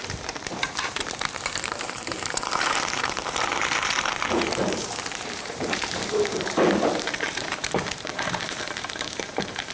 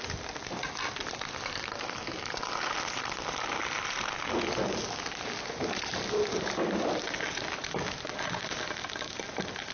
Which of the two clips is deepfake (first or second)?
first